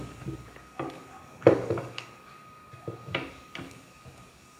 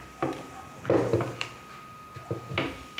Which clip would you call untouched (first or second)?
second